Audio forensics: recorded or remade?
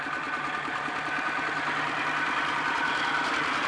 recorded